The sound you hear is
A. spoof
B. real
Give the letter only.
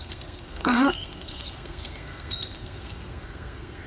A